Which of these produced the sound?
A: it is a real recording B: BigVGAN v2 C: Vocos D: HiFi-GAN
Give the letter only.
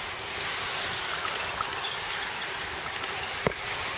A